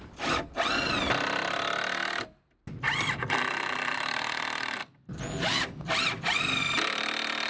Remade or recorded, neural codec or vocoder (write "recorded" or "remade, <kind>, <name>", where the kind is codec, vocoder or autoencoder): recorded